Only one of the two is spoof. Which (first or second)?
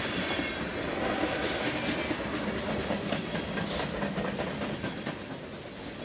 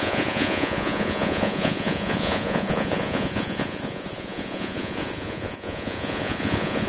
second